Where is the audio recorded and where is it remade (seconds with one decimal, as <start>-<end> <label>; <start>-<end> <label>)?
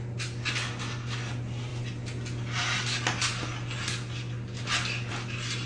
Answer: 0.0-5.7 recorded